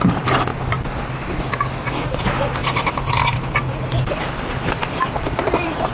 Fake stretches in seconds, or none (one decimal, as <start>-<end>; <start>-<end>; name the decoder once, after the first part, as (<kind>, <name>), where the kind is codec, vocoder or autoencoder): 0.0-0.5 (vocoder, BigVGAN v2); 2.0-2.6; 4.1-5.9